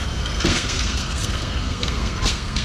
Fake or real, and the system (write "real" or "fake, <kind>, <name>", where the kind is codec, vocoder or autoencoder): fake, codec, SNAC